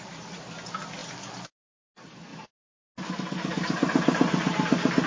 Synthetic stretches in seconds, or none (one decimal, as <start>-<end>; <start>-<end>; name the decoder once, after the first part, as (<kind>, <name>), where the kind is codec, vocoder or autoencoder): none